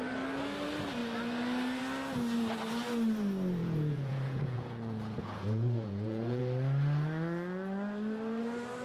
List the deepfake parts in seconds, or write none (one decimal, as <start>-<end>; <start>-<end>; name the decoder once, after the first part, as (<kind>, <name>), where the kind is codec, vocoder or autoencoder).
3.6-6.4 (vocoder, Vocos)

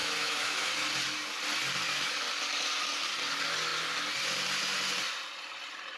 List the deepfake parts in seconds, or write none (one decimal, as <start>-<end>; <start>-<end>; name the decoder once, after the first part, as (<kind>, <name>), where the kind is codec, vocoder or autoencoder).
0.0-0.7 (autoencoder, DAC-VAE)